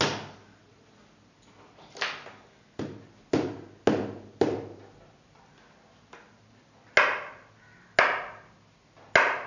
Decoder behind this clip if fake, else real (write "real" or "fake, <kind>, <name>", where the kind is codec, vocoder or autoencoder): real